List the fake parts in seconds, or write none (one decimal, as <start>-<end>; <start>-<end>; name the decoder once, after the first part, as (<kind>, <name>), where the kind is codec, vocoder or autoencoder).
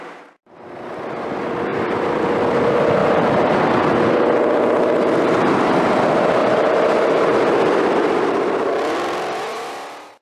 1.7-2.4 (vocoder, BigVGAN v2); 3.0-3.7; 6.4-10.2